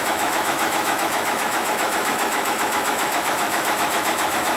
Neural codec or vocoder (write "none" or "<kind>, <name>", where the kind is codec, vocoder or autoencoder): autoencoder, DAC-VAE